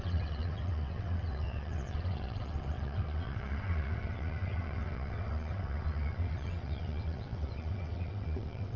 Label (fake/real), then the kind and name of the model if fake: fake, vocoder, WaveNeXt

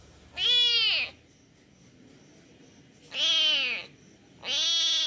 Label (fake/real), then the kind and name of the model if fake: real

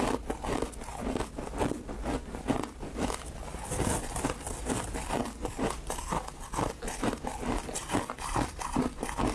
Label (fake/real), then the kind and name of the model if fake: real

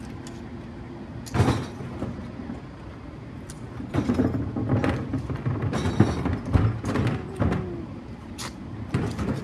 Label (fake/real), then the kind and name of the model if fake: real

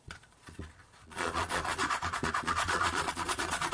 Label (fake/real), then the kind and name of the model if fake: fake, vocoder, Vocos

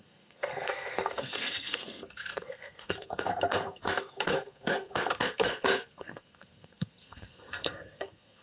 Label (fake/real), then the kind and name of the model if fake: fake, codec, SNAC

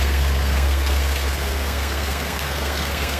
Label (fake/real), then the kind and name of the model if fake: fake, codec, SNAC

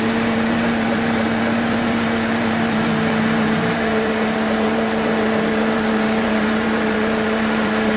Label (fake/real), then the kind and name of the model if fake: fake, vocoder, BigVGAN v2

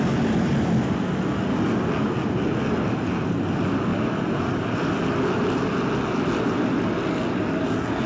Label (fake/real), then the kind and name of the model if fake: real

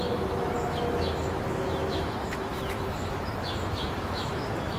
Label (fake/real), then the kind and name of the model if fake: fake, autoencoder, DAC-VAE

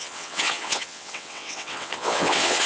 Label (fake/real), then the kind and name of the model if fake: fake, vocoder, WaveNeXt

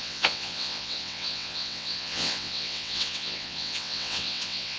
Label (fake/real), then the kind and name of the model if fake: fake, vocoder, WaveNeXt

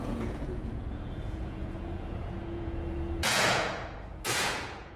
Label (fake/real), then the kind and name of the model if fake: fake, vocoder, Vocos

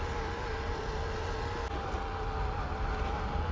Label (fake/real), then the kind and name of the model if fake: real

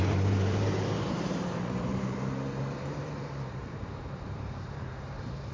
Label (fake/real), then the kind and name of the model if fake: fake, vocoder, BigVGAN v2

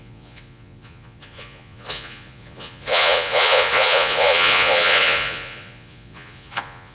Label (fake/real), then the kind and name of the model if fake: fake, vocoder, Vocos